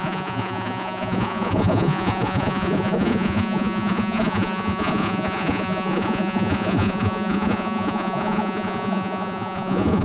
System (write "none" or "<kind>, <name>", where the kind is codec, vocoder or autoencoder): vocoder, Vocos